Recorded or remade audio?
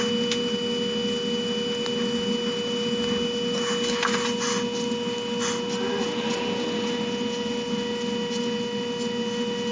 recorded